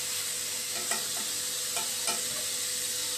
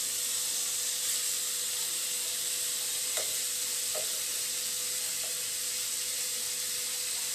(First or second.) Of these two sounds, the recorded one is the first